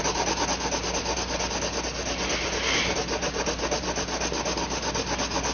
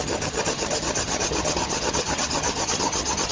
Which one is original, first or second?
first